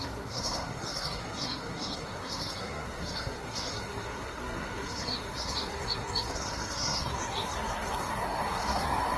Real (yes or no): no